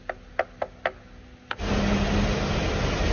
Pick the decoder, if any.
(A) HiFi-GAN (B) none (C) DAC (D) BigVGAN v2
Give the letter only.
B